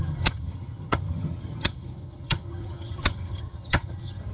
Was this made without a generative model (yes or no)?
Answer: no